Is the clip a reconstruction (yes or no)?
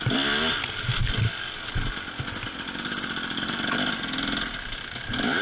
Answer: no